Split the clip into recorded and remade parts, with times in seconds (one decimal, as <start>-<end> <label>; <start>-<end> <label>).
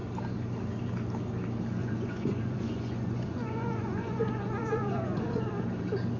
0.0-1.8 recorded; 1.8-5.5 remade; 5.5-6.2 recorded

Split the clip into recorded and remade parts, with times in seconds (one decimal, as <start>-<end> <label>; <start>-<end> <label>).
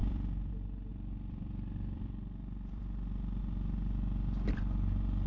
0.0-0.5 remade; 0.5-0.9 recorded; 0.9-3.4 remade; 3.4-5.3 recorded